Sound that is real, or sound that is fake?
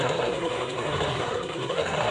fake